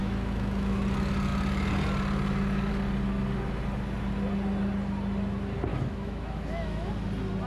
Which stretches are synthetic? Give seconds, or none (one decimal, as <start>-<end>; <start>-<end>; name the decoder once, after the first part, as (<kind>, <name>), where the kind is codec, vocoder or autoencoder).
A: 0.0-0.8 (autoencoder, DAC-VAE); 5.7-6.9